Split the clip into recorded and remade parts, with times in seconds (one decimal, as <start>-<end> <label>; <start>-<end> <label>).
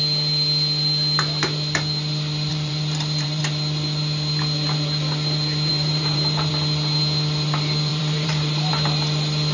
0.0-2.5 recorded; 2.5-3.4 remade; 3.4-5.7 recorded; 5.7-6.5 remade; 6.5-7.9 recorded; 7.9-8.7 remade; 8.7-9.5 recorded